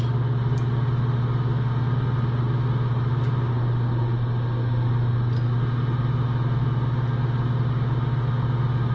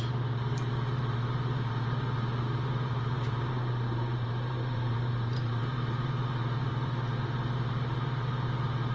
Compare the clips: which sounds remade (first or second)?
second